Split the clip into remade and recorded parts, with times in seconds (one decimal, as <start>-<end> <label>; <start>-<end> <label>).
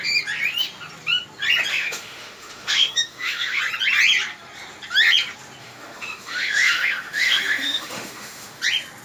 0.0-1.7 recorded; 1.7-3.6 remade; 3.6-5.6 recorded; 5.6-8.6 remade; 8.6-9.0 recorded